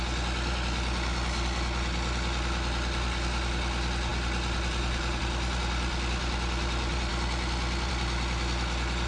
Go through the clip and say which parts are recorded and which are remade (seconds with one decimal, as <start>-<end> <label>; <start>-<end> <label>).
0.0-9.1 recorded